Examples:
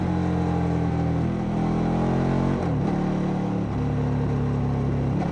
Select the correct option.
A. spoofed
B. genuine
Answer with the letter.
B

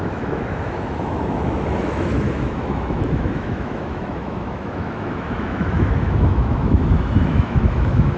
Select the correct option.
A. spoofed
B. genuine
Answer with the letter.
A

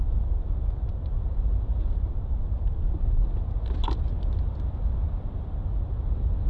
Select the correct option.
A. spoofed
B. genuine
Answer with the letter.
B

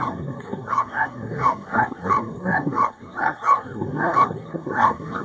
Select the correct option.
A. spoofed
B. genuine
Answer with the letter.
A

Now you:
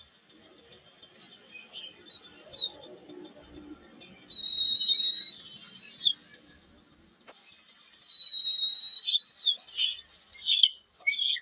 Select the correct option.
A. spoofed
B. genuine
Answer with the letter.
B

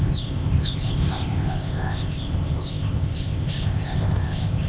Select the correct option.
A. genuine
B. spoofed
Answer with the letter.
B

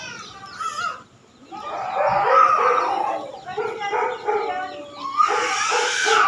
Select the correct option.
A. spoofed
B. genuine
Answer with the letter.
B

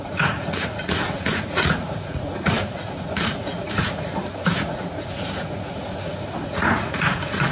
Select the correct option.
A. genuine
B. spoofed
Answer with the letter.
B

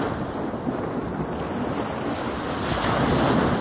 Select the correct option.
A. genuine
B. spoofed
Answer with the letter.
A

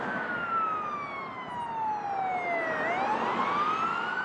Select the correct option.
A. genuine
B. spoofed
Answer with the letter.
A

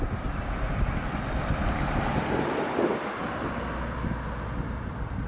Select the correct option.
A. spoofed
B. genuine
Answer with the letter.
B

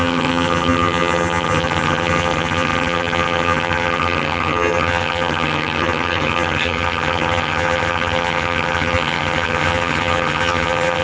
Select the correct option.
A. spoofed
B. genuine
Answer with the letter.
A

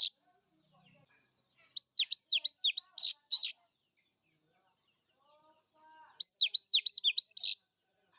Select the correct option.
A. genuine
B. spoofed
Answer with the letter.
A